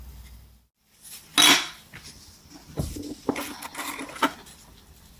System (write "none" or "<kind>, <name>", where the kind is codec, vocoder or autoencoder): none